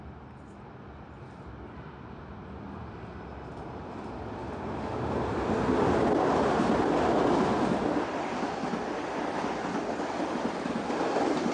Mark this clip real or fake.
real